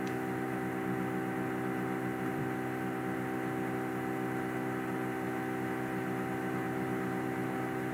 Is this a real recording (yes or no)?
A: yes